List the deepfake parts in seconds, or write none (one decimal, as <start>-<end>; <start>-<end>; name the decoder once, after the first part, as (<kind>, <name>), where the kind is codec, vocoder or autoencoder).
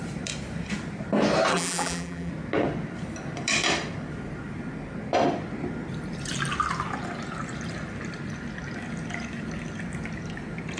1.5-2.3 (vocoder, BigVGAN v2)